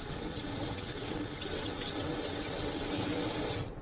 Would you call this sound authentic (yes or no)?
no